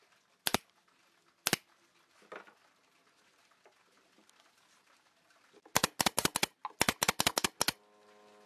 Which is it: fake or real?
real